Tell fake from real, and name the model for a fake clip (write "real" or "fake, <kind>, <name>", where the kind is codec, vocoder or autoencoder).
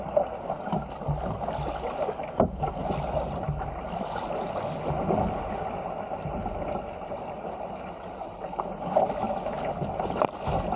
real